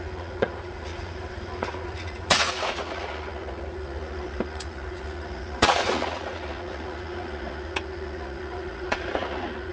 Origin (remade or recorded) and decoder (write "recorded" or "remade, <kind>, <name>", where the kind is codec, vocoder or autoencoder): remade, vocoder, Vocos